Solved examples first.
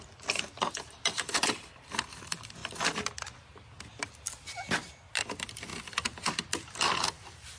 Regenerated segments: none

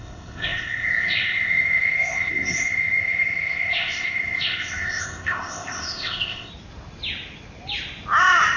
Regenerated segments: 0.0-6.5 (codec, ZipCodec)

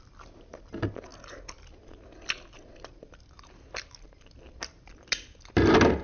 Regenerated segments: none

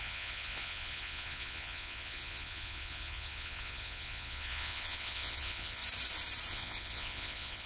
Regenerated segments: 0.0-5.8 (vocoder, Vocos); 6.5-7.7

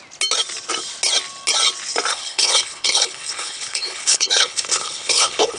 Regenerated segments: 2.1-5.6 (codec, HILCodec)

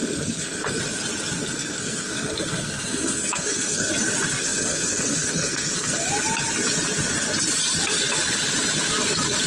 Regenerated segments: 0.0-0.8 (codec, SNAC); 1.4-3.9; 4.4-6.1

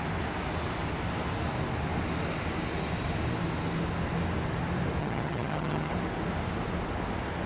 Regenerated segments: 5.0-5.9 (vocoder, HiFi-GAN)

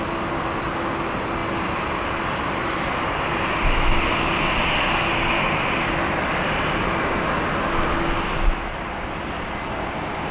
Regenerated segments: none